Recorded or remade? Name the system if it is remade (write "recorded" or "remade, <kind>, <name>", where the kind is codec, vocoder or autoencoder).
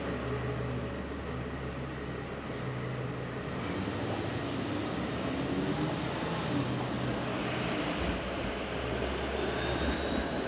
recorded